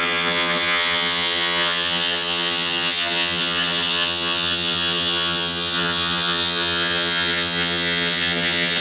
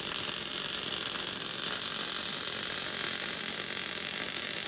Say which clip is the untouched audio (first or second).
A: second